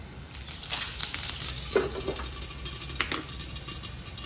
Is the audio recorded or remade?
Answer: recorded